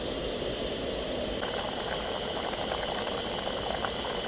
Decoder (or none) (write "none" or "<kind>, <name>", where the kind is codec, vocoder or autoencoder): none